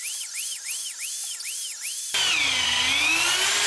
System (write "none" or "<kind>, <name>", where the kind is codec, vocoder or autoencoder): none